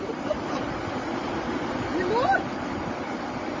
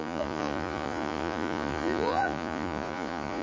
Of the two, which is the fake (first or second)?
second